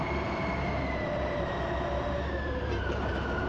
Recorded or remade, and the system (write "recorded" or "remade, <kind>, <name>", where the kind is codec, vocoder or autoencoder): remade, vocoder, BigVGAN v2